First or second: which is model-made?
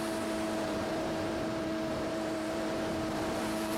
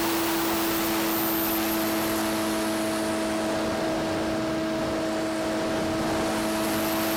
first